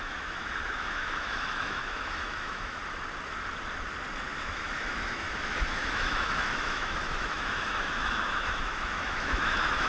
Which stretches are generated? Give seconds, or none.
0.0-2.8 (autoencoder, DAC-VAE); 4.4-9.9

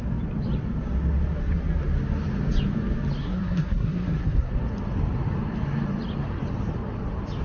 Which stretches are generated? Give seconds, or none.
3.2-4.5 (codec, SNAC)

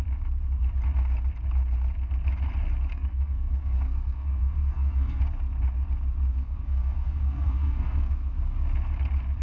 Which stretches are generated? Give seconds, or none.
2.9-5.2 (codec, SNAC); 6.3-8.1

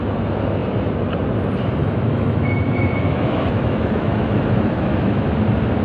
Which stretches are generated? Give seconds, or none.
1.8-5.3 (autoencoder, DAC-VAE)

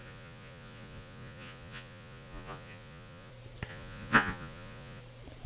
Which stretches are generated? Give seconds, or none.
0.0-3.3 (vocoder, Vocos); 3.7-5.0

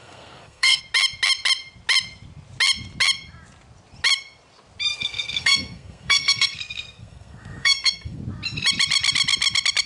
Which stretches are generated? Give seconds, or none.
0.0-0.8 (codec, SNAC); 4.9-8.2

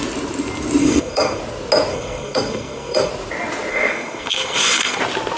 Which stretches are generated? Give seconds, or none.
0.8-1.4 (codec, SNAC); 1.9-3.1; 3.7-5.0